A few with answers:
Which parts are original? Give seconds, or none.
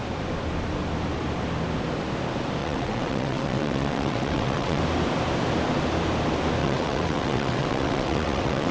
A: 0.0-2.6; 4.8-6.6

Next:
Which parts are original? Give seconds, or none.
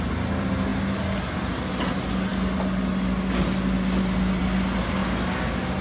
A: 0.0-5.8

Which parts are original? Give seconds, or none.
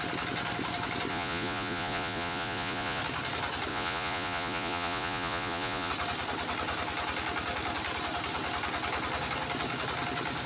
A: 0.0-1.1; 3.0-3.7; 5.9-10.5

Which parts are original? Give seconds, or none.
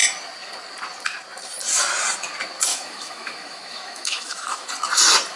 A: 0.0-2.7; 4.7-5.4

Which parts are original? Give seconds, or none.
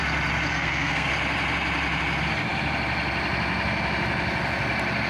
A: 0.0-0.5; 1.1-5.1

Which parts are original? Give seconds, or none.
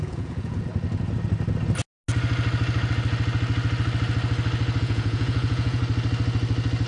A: 0.7-4.8; 5.8-6.9